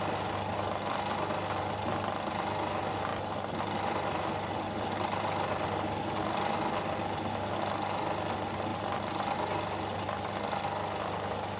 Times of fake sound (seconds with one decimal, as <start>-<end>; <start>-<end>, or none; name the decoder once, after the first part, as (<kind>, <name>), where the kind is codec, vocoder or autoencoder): none

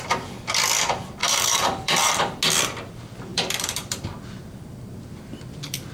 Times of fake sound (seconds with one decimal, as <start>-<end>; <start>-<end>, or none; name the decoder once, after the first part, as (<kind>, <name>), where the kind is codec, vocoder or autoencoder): 1.2-2.2 (vocoder, BigVGAN v2); 3.3-4.0

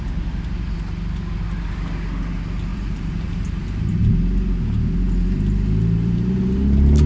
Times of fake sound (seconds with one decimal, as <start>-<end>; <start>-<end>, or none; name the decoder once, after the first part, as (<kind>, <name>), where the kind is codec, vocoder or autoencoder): 2.7-4.1 (vocoder, BigVGAN v2); 5.2-6.4

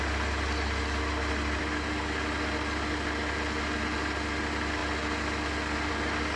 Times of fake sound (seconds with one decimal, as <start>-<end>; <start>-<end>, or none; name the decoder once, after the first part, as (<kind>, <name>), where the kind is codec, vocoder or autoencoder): none

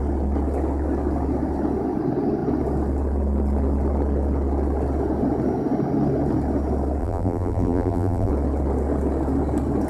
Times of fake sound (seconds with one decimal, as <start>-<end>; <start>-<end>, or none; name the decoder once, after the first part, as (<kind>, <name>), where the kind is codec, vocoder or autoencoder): 7.0-8.3 (vocoder, BigVGAN v2)